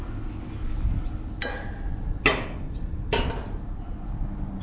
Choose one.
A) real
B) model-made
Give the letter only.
A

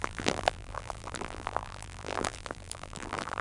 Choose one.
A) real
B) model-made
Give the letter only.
B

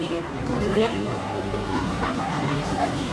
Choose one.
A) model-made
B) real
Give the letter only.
A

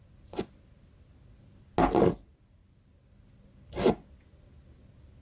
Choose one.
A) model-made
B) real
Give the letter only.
B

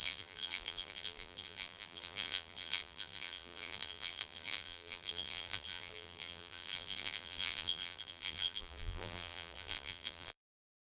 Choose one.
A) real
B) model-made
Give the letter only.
B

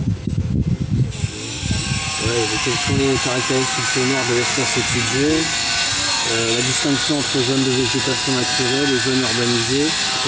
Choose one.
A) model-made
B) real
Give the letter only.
B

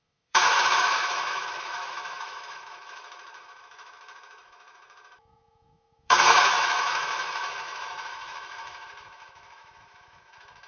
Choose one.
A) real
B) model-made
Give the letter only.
B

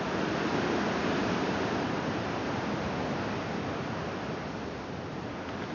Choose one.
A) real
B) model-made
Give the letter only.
A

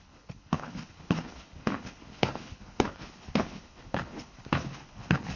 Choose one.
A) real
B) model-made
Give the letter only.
B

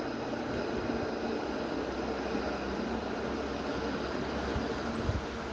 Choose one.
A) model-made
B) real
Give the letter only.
B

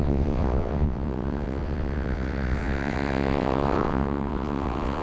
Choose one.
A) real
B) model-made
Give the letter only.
B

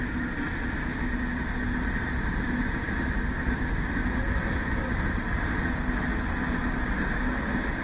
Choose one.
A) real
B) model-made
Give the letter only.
A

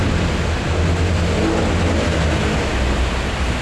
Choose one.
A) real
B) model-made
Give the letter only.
A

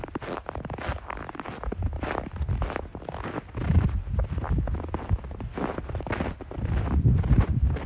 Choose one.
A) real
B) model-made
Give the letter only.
A